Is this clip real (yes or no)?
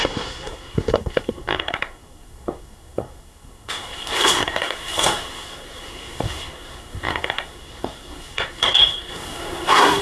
no